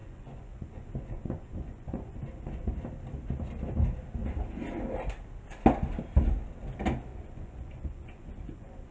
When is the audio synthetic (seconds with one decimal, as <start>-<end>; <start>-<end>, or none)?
0.0-2.8; 7.1-8.9

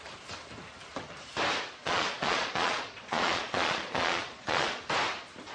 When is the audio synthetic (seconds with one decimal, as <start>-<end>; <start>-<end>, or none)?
1.8-4.8

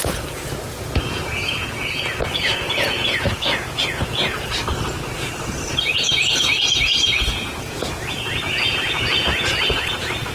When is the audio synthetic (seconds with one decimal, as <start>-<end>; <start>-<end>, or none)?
0.0-4.6; 5.8-10.3

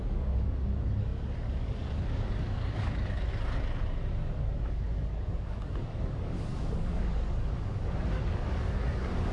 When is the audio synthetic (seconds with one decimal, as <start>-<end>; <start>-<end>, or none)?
0.0-3.3; 4.1-9.3

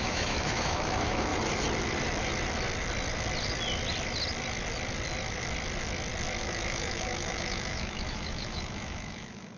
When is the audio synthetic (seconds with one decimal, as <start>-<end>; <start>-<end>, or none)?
0.0-1.3; 6.4-9.6